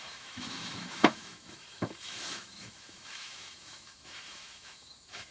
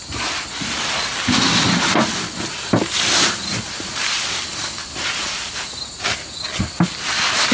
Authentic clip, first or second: second